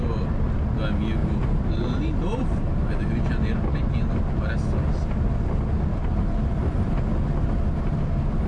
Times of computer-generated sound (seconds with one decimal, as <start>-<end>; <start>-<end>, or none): 1.2-2.9; 5.9-6.9